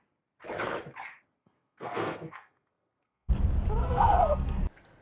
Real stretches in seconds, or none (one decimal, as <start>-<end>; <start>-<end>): 0.0-1.4; 3.3-3.8; 4.6-5.0